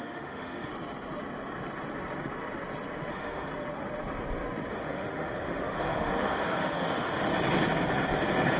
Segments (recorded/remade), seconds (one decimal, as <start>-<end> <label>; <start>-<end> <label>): 0.0-0.7 remade; 0.7-3.1 recorded; 3.1-3.5 remade; 3.5-4.7 recorded; 4.7-7.3 remade; 7.3-8.6 recorded